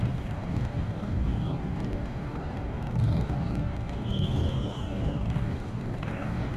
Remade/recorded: remade